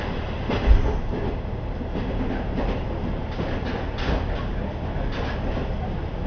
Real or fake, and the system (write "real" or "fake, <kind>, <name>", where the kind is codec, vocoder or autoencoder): real